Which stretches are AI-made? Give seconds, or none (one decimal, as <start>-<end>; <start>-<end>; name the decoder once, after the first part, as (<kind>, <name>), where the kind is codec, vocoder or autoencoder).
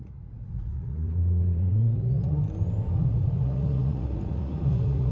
0.0-2.4 (vocoder, Vocos); 3.0-5.1